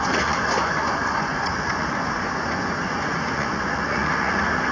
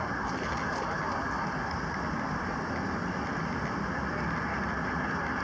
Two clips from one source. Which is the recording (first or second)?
second